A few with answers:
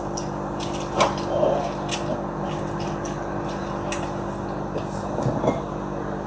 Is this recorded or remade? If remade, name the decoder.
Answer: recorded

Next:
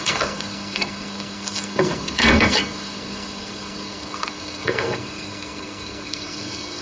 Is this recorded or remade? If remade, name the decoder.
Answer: remade, codec, SNAC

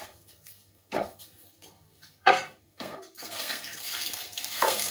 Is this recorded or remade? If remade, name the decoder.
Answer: remade, codec, SNAC